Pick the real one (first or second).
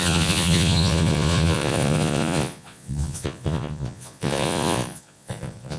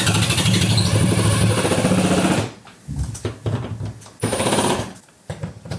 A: second